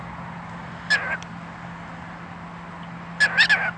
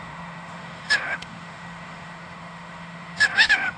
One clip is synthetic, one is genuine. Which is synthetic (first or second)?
second